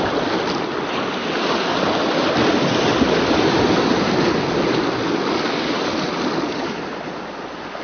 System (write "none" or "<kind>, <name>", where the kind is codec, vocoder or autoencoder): none